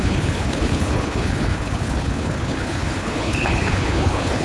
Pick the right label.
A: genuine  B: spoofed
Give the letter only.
B